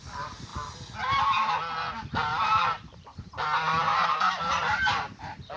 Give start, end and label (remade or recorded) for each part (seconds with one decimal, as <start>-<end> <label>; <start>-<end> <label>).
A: 0.0-2.3 recorded; 2.3-3.3 remade; 3.3-3.9 recorded; 3.9-5.6 remade